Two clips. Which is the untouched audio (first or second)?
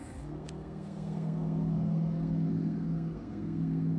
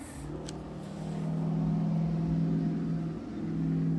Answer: second